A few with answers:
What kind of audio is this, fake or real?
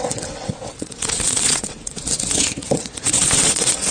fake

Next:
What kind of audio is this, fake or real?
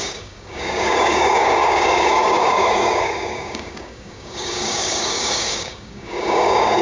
fake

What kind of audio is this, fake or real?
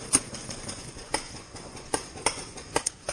fake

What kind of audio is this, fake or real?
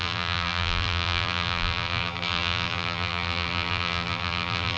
fake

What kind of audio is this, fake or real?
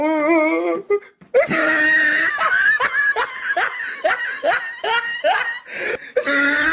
real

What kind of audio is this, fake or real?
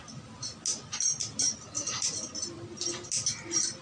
real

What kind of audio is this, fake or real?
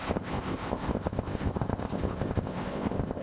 fake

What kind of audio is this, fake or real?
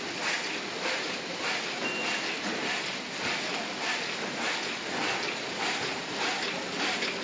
real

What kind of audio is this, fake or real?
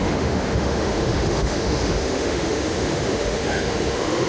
fake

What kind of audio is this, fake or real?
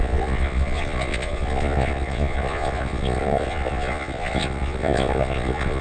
fake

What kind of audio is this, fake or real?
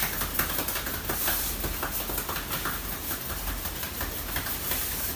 real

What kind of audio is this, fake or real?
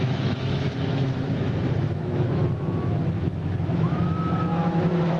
fake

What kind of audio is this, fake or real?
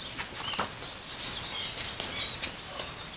real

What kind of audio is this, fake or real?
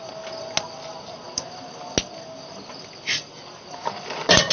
real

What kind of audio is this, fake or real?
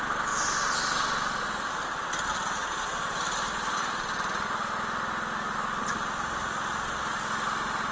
real